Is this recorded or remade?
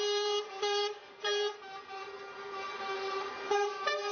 remade